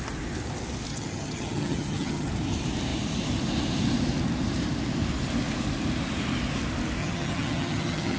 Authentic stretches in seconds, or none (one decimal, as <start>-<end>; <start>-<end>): 0.0-0.9; 2.3-7.0